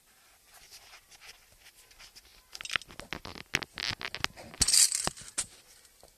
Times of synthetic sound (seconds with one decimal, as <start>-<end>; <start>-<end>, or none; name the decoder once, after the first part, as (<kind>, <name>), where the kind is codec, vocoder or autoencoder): none